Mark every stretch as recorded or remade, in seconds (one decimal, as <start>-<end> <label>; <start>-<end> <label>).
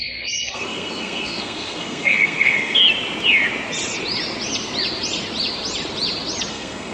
0.0-2.8 remade; 2.8-6.5 recorded; 6.5-6.9 remade